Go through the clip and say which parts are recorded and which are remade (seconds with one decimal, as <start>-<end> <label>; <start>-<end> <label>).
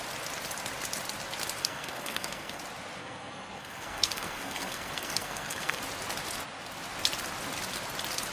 0.0-1.6 recorded; 1.6-2.6 remade; 2.6-3.0 recorded; 3.0-5.8 remade; 5.8-8.3 recorded